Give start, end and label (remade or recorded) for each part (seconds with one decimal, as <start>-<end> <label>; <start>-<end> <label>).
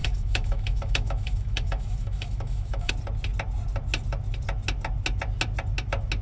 0.0-2.9 remade; 2.9-6.2 recorded